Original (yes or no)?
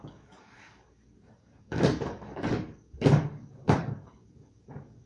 no